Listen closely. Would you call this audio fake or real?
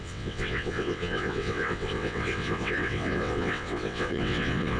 fake